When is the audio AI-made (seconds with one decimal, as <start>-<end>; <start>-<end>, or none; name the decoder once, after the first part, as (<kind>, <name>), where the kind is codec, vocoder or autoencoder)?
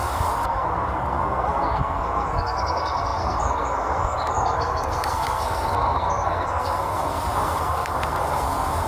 0.0-8.9 (codec, SNAC)